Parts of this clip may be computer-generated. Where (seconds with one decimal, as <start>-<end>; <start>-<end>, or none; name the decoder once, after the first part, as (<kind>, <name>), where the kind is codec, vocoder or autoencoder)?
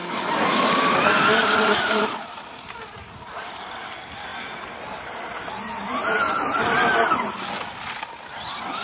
1.4-2.1 (vocoder, BigVGAN v2)